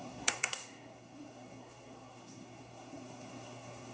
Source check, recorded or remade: remade